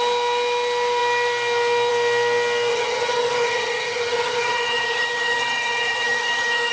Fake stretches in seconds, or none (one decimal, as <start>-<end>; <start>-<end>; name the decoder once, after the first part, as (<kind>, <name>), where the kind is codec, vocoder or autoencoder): 2.7-6.7 (vocoder, HiFi-GAN)